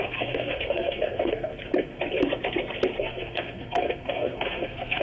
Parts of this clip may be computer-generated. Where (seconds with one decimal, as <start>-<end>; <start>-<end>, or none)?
0.0-1.5; 3.0-5.0